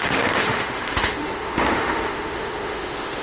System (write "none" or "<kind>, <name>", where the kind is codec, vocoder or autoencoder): autoencoder, DAC-VAE